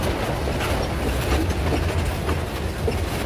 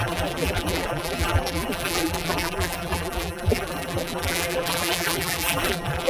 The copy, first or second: second